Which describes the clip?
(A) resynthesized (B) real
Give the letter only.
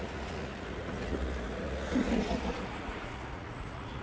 A